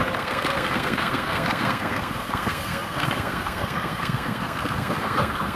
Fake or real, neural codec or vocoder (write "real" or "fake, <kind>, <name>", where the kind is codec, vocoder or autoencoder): fake, codec, SNAC